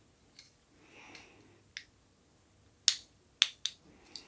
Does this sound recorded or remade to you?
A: recorded